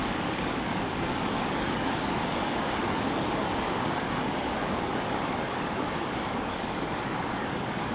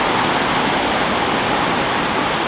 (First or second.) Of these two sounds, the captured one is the second